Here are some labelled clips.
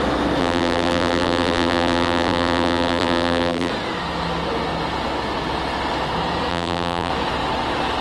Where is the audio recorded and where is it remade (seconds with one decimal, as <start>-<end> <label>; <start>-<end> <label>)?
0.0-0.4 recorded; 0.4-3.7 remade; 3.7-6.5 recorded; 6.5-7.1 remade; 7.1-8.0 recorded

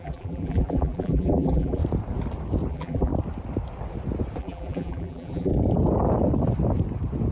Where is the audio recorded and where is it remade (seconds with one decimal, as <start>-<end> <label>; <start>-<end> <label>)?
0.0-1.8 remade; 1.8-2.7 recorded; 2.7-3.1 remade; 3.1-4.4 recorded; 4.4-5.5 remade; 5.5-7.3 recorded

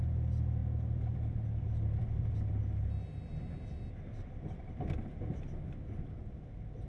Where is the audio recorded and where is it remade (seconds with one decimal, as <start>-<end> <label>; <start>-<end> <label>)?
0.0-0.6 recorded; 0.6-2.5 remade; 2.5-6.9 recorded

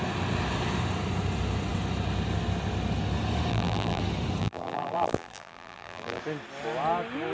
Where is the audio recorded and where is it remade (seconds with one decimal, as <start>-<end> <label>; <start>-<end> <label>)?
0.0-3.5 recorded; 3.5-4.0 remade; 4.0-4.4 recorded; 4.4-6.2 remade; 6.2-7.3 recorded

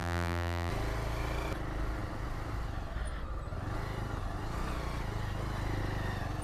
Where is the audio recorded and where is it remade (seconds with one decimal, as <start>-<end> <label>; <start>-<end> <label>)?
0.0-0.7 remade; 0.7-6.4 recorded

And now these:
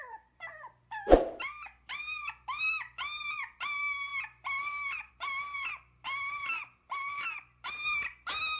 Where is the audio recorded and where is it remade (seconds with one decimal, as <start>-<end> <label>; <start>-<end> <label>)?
0.0-4.1 recorded; 4.1-5.1 remade; 5.1-8.6 recorded

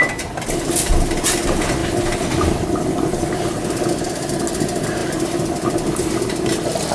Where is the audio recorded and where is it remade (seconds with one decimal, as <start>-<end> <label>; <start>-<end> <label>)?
0.0-5.0 recorded; 5.0-5.7 remade; 5.7-6.9 recorded

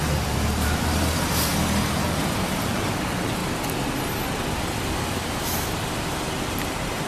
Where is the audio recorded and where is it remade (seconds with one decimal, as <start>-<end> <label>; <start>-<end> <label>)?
0.0-1.5 remade; 1.5-2.0 recorded; 2.0-3.4 remade; 3.4-6.4 recorded; 6.4-7.1 remade